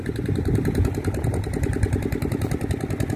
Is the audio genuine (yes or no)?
yes